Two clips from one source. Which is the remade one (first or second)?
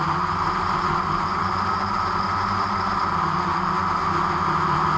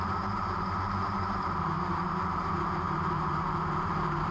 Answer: second